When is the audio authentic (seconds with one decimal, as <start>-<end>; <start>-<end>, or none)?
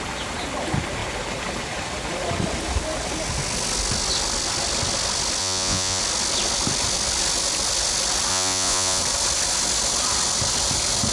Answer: 0.0-5.4; 6.0-8.3; 9.0-11.1